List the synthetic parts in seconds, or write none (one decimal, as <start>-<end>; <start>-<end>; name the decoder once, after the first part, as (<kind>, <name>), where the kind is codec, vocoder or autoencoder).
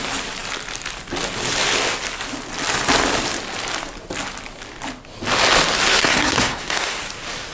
5.9-7.0 (codec, SNAC)